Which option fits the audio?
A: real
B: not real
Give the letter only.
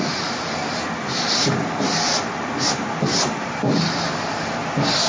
B